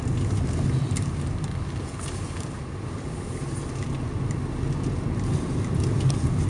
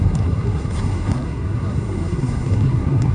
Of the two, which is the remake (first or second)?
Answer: second